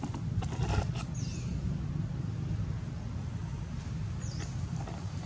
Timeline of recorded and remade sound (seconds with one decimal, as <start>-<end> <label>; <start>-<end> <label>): 0.0-5.3 recorded